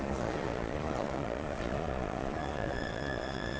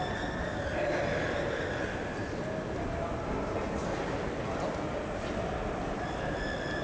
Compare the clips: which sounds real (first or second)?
second